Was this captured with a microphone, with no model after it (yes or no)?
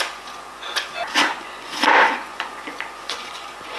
no